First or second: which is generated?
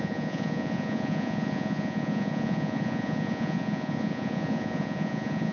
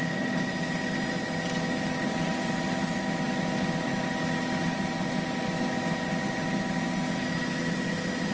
first